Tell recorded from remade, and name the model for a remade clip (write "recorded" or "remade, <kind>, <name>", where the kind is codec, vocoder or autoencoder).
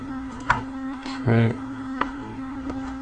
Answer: remade, codec, SNAC